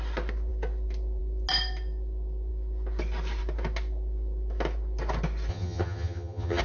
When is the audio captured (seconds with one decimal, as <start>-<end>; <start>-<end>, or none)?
0.0-5.5